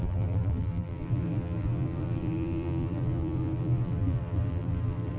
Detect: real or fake fake